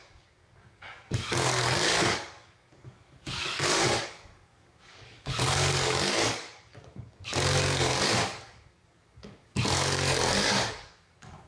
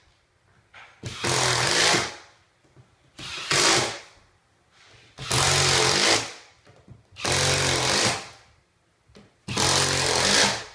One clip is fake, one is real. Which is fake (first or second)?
first